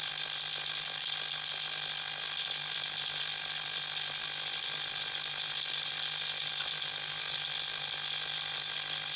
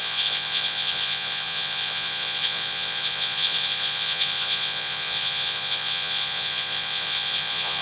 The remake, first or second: second